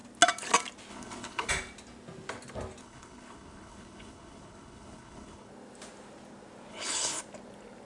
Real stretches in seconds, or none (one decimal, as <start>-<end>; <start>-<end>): 0.0-0.9; 1.5-2.8; 5.5-6.7; 7.2-7.9